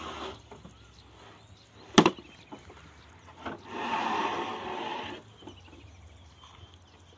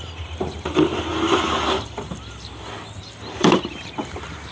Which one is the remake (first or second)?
second